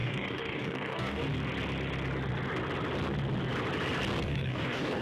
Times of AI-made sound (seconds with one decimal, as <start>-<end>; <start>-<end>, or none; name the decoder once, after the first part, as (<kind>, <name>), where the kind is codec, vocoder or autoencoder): 0.0-1.2 (codec, DAC); 4.2-5.0